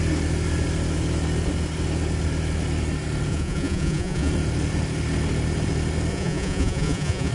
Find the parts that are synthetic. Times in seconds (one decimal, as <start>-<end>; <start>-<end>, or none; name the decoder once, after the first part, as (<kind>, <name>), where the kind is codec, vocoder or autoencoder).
3.3-4.3 (vocoder, Vocos); 6.1-7.3